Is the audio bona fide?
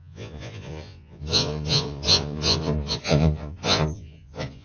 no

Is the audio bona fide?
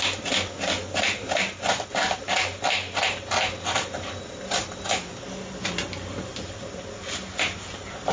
yes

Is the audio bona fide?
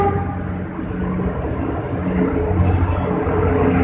yes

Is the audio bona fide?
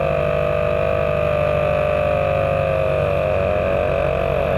yes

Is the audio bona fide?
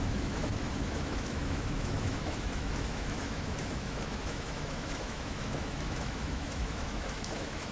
no